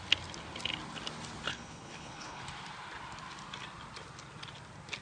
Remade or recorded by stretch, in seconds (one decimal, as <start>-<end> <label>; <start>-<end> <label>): 0.0-1.5 recorded; 1.5-2.4 remade; 2.4-5.0 recorded